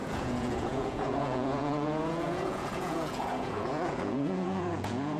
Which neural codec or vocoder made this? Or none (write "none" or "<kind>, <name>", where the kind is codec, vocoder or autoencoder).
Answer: vocoder, Vocos